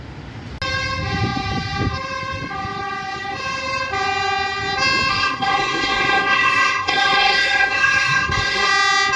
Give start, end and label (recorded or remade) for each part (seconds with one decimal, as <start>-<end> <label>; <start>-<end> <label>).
0.0-5.1 recorded; 5.1-8.7 remade; 8.7-9.2 recorded